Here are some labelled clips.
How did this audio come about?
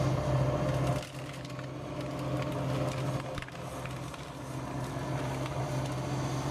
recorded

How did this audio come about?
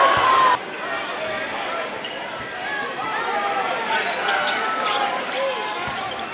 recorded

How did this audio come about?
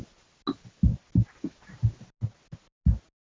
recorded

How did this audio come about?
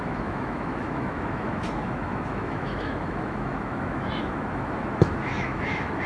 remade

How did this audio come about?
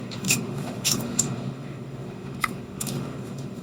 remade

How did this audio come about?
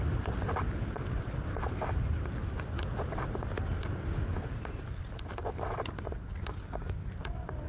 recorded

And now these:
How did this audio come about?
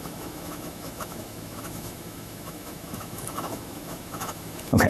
remade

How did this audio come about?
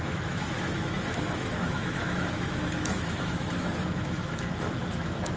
remade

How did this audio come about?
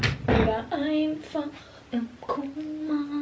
recorded